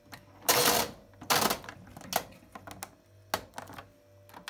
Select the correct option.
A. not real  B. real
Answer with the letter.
B